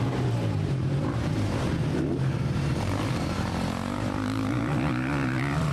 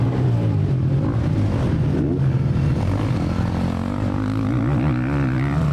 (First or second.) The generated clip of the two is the first